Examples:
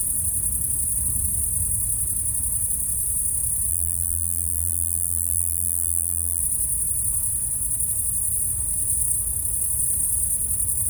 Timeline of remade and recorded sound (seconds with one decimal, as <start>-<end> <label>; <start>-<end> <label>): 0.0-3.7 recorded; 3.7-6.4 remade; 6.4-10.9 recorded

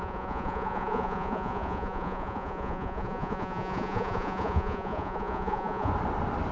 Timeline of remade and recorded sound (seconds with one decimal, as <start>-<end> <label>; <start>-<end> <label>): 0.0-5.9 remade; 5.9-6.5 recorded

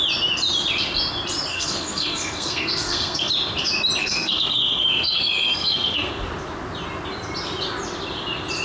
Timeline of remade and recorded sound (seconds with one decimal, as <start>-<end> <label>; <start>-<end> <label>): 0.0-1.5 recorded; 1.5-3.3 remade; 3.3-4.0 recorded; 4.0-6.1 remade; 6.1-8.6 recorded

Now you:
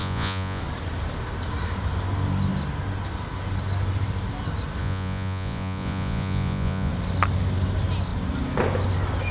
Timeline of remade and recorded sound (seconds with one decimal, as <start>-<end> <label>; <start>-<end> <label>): 0.0-0.6 remade; 0.6-4.8 recorded; 4.8-6.9 remade; 6.9-9.3 recorded

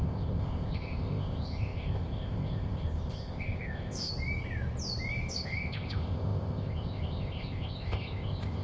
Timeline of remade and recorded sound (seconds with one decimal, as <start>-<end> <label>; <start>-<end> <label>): 0.0-4.1 remade; 4.1-5.3 recorded; 5.3-8.6 remade

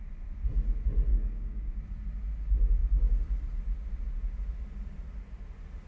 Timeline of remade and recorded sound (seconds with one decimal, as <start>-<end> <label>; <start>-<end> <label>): 0.0-1.1 recorded; 1.1-1.8 remade; 1.8-5.9 recorded